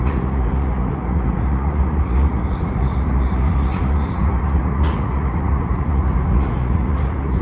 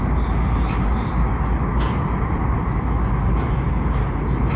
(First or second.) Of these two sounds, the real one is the second